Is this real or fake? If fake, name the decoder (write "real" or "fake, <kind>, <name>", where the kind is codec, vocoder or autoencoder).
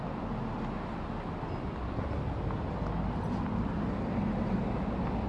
real